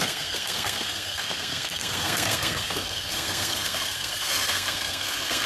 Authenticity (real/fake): fake